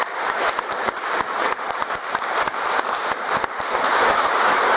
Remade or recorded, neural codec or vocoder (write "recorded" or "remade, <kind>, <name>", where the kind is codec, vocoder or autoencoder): remade, vocoder, BigVGAN v2